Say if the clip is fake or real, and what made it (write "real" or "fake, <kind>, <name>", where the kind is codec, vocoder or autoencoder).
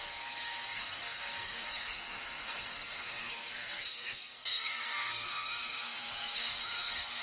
fake, codec, SNAC